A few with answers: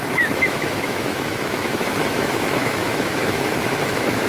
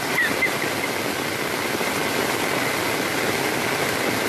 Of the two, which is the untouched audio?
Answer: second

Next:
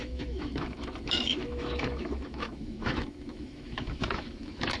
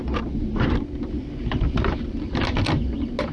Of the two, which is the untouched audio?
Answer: second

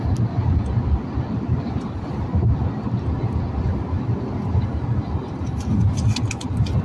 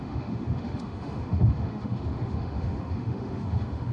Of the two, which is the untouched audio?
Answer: first